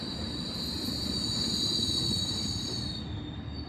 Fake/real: real